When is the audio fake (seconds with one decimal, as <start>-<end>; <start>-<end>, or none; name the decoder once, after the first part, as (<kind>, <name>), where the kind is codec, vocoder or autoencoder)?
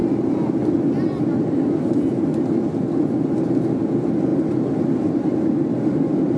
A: none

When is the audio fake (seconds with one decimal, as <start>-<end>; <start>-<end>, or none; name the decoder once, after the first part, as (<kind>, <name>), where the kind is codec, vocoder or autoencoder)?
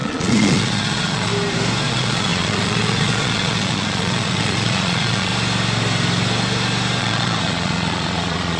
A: 0.0-1.3 (vocoder, Vocos); 1.9-5.3; 7.0-8.6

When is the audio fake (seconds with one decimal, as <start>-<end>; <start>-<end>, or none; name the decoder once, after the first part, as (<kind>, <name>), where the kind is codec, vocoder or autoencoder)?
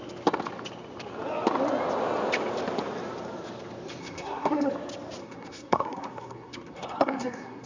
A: 4.0-4.7 (codec, SNAC); 5.2-7.7